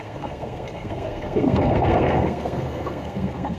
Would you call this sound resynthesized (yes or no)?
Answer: yes